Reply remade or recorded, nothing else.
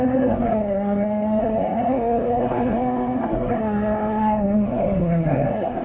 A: remade